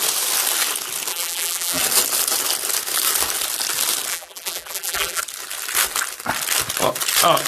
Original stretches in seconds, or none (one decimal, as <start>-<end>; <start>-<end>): 0.0-1.1; 1.8-4.1; 5.2-7.5